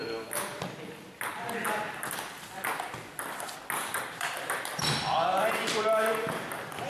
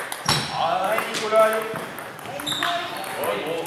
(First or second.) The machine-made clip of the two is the first